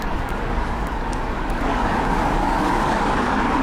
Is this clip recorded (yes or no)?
no